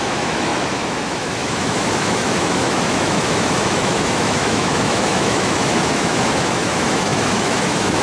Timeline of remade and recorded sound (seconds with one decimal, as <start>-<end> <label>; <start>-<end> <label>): 0.0-8.0 remade